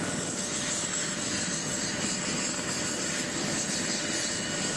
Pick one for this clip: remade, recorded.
recorded